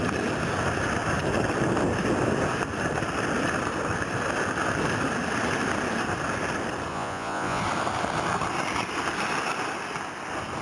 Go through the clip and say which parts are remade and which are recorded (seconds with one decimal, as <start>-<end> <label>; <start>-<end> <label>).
0.0-6.9 recorded; 6.9-7.6 remade; 7.6-10.6 recorded